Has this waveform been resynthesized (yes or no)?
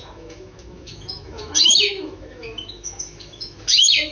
yes